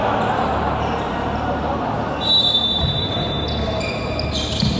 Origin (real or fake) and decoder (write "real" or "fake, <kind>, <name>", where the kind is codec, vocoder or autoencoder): real